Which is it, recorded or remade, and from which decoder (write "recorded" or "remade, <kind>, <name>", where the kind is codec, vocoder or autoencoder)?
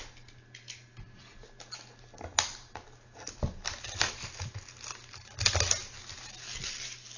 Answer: recorded